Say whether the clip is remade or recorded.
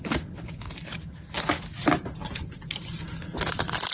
recorded